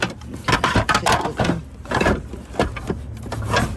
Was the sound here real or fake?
real